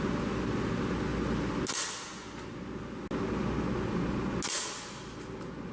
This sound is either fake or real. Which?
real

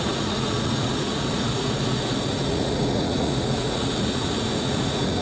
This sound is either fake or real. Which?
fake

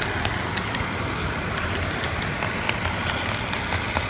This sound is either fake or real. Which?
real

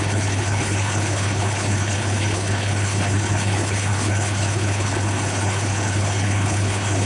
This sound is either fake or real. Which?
fake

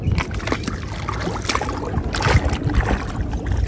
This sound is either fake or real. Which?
real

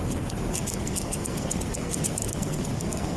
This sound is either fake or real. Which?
fake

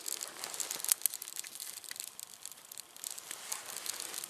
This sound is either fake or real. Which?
real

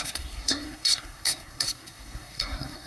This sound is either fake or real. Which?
fake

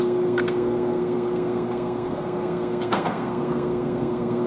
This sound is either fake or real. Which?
fake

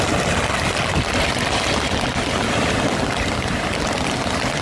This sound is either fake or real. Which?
real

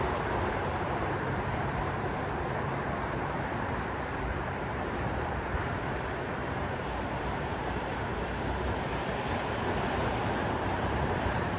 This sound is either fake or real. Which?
fake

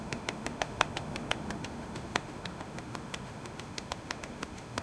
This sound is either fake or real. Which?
fake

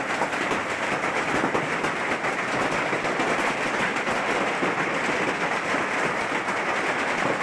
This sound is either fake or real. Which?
real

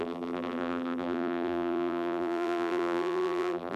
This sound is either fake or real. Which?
fake